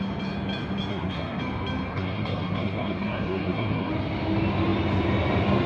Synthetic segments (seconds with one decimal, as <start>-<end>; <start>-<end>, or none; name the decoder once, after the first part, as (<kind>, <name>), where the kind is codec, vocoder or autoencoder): 0.9-1.4 (codec, SNAC); 1.9-3.9